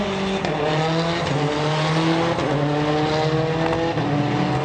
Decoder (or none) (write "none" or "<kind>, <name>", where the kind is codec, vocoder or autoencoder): none